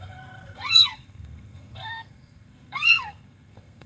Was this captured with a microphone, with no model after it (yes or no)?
no